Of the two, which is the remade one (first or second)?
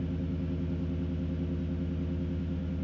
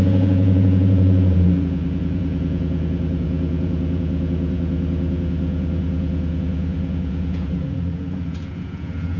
second